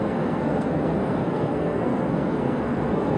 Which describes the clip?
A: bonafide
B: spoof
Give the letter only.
B